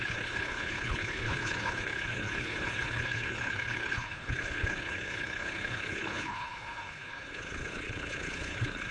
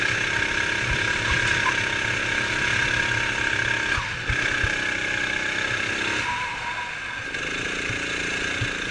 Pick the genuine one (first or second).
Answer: second